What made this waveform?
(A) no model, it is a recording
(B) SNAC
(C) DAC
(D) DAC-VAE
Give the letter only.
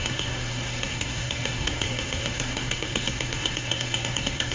B